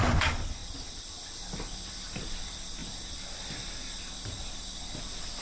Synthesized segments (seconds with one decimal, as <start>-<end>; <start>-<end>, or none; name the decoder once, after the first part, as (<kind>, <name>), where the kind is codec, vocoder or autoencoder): none